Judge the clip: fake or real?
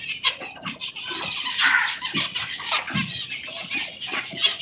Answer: real